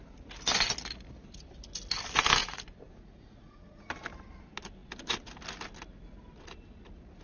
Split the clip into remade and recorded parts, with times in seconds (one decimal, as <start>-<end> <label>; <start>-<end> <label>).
0.0-2.4 recorded; 2.4-3.9 remade; 3.9-7.2 recorded